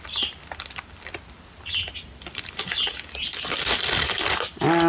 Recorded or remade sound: recorded